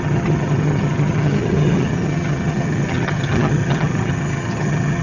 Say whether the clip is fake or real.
fake